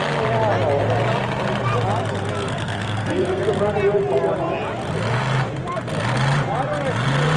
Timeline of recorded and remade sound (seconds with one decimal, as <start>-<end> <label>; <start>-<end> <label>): 0.0-2.4 recorded; 2.4-3.4 remade; 3.4-7.4 recorded